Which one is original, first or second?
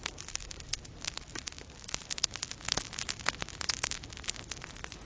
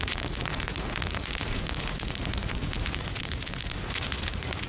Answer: first